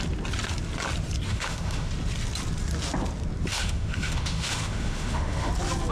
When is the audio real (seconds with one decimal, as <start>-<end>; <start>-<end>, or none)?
0.0-1.3; 1.9-3.5; 5.5-5.9